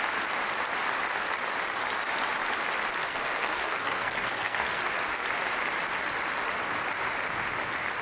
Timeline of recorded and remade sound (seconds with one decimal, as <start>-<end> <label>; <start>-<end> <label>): 0.0-3.0 recorded; 3.0-4.8 remade; 4.8-8.0 recorded